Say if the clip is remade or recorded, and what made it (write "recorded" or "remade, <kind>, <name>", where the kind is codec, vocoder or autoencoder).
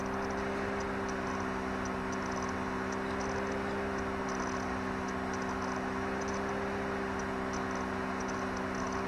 recorded